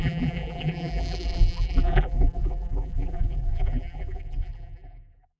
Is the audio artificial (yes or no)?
yes